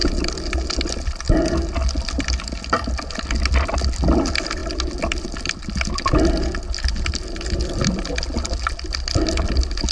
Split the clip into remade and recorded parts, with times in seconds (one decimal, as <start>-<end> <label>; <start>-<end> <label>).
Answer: 0.0-9.9 recorded

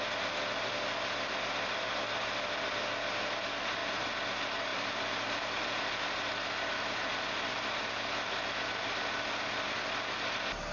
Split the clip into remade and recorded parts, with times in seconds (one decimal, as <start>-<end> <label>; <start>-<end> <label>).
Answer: 0.0-10.7 recorded

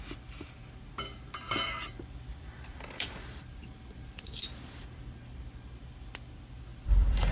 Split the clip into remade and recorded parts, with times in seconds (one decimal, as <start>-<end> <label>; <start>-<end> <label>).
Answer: 0.0-2.3 recorded; 2.3-5.4 remade; 5.4-6.7 recorded; 6.7-7.3 remade